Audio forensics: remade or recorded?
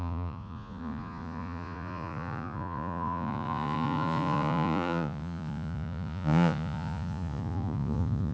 remade